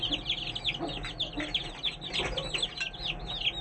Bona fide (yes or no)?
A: yes